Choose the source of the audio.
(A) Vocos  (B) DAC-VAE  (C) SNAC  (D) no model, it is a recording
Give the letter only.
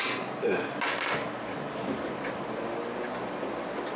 D